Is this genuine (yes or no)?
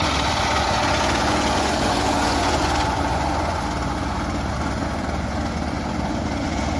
no